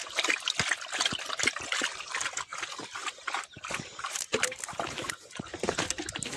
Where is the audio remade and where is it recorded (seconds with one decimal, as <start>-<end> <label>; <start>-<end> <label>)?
0.0-6.4 recorded